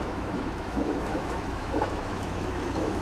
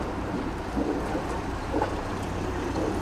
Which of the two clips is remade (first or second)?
first